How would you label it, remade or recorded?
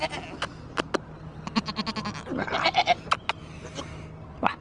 recorded